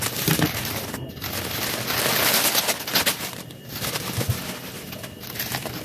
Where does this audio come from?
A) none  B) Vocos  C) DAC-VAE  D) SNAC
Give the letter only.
A